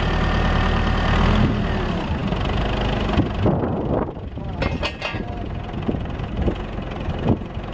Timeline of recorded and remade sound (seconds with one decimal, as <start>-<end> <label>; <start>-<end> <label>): 0.0-7.7 recorded